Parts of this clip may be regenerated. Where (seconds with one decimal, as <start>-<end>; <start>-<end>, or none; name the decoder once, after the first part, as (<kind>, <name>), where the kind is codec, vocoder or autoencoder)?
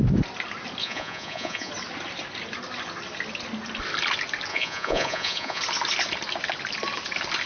0.8-1.7 (vocoder, Vocos); 4.5-5.6